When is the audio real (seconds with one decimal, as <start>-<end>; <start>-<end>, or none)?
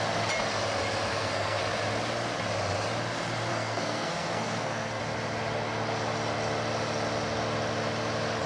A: 0.0-1.1; 1.6-3.5; 5.0-8.5